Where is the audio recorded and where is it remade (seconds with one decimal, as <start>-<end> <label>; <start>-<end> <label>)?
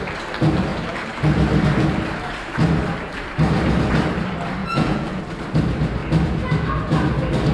0.0-4.6 recorded; 4.6-5.2 remade; 5.2-7.5 recorded